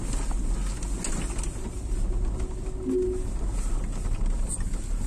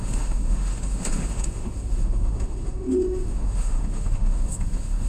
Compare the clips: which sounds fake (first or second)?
second